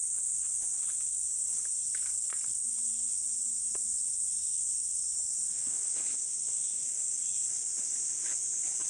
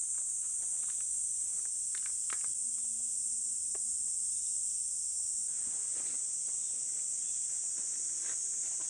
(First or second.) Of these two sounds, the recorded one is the second